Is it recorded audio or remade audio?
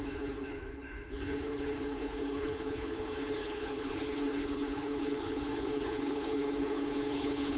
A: remade